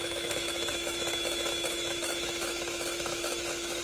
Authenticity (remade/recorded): remade